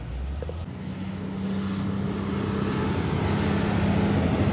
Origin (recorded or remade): recorded